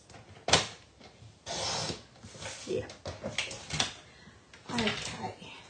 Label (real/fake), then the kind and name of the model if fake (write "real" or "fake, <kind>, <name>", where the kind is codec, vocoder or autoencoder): real